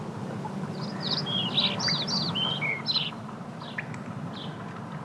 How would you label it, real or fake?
real